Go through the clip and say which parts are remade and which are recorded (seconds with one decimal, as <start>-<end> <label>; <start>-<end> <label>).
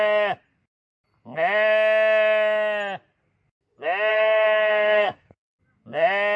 0.0-4.1 recorded; 4.1-5.6 remade; 5.6-6.4 recorded